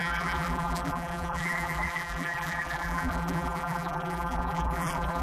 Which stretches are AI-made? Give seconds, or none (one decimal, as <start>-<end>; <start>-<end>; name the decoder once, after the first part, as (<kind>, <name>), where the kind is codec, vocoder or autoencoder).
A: 0.0-5.2 (vocoder, BigVGAN v2)